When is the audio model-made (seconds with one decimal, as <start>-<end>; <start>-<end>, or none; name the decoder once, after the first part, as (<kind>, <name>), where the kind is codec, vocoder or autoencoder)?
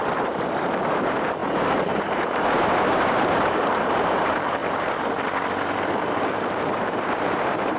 0.0-4.6 (vocoder, BigVGAN v2); 6.5-7.8